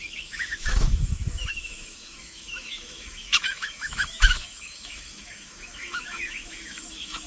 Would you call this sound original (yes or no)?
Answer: no